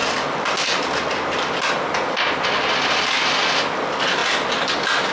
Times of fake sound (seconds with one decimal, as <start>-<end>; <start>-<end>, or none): none